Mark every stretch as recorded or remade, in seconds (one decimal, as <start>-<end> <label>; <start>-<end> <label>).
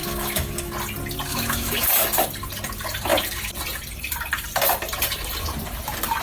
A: 0.0-0.7 remade; 0.7-1.3 recorded; 1.3-1.9 remade; 1.9-6.2 recorded